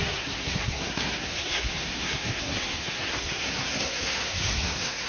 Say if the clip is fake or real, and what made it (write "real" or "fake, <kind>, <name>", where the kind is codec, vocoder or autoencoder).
fake, codec, SNAC